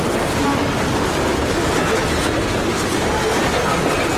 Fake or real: real